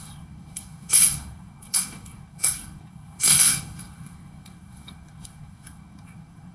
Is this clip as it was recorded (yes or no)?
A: no